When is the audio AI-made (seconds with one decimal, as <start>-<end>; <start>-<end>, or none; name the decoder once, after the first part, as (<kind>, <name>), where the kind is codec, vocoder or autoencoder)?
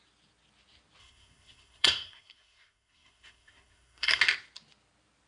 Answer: 1.0-4.2 (codec, SNAC)